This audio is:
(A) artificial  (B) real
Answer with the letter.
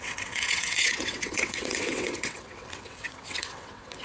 A